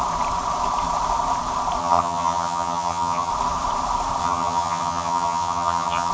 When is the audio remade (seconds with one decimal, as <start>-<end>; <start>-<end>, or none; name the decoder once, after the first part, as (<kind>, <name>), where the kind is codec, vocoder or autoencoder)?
1.8-3.3 (vocoder, HiFi-GAN); 4.2-6.1